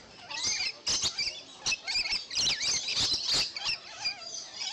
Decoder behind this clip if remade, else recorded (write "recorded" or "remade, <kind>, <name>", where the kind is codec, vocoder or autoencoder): recorded